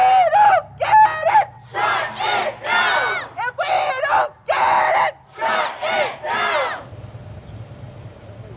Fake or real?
real